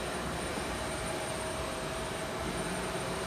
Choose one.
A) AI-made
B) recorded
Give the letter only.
A